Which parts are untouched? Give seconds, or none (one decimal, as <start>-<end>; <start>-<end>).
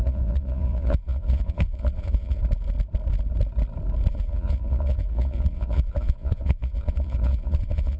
2.4-4.1